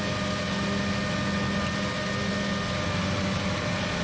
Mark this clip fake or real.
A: real